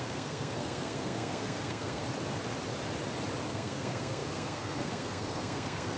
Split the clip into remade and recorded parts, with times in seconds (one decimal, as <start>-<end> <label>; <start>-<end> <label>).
0.0-2.0 remade; 2.0-3.5 recorded; 3.5-6.0 remade